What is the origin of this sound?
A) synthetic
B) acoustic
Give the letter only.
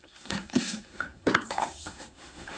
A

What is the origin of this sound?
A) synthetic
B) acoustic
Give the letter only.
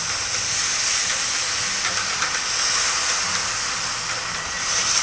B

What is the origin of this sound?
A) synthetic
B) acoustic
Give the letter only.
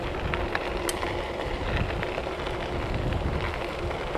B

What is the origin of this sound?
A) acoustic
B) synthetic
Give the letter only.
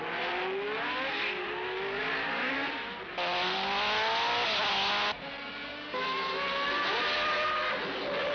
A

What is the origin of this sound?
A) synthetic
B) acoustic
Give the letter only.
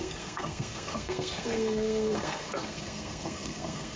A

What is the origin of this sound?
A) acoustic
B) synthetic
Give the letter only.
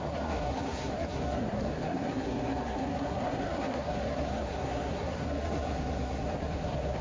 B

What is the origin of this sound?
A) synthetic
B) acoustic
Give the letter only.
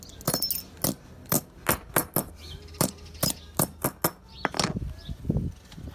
B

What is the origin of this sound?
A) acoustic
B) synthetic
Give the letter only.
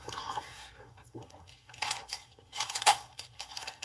B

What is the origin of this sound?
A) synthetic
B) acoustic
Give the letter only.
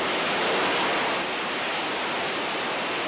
B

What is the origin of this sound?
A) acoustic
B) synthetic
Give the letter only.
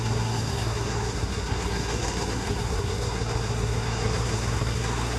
B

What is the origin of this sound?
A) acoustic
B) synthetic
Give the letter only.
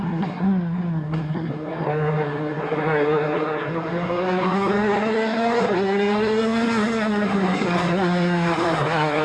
B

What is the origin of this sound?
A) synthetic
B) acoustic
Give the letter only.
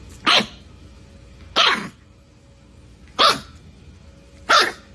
B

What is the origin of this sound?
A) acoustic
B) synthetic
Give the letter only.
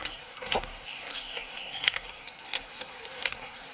B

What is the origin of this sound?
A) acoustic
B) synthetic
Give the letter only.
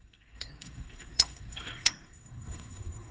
B